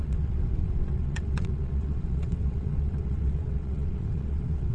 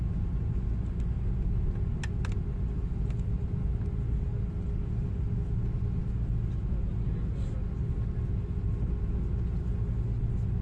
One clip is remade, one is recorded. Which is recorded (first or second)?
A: second